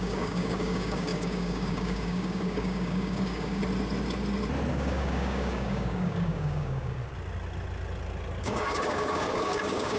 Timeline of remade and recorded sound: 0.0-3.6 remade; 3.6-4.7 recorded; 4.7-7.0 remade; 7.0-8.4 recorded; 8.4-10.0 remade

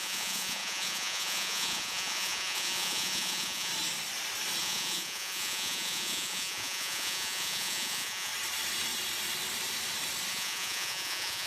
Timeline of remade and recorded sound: 0.0-3.7 remade; 3.7-4.6 recorded; 4.6-8.3 remade; 8.3-10.3 recorded; 10.3-11.5 remade

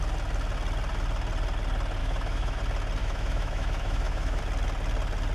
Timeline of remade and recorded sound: 0.0-2.0 recorded; 2.0-2.6 remade; 2.6-3.0 recorded; 3.0-4.4 remade; 4.4-5.3 recorded

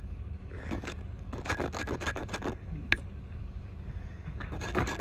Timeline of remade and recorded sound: 0.0-5.0 remade